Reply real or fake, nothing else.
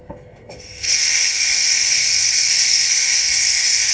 fake